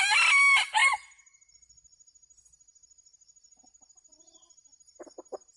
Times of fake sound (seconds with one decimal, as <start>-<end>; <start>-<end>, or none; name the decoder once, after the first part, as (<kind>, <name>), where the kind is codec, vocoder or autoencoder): none